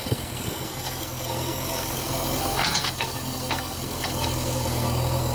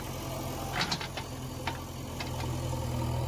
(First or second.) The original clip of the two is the second